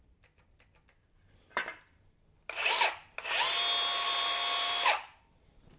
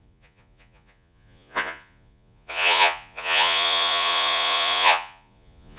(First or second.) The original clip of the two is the first